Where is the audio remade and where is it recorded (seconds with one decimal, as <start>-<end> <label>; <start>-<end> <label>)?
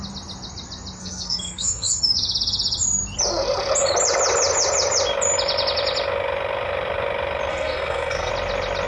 0.0-1.0 recorded; 1.0-2.0 remade; 2.0-7.5 recorded; 7.5-8.3 remade; 8.3-8.9 recorded